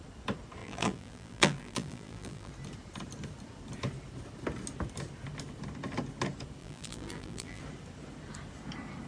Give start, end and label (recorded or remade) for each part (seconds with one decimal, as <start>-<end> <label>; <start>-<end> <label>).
0.0-0.6 recorded; 0.6-2.5 remade; 2.5-6.6 recorded; 6.6-7.6 remade; 7.6-9.1 recorded